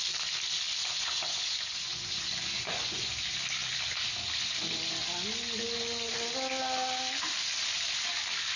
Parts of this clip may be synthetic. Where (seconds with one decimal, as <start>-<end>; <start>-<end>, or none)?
0.8-3.2